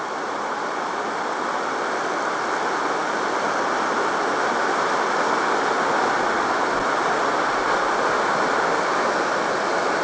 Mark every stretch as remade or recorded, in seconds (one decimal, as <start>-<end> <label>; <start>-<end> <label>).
0.0-10.0 recorded